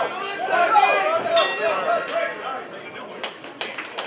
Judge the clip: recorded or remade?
recorded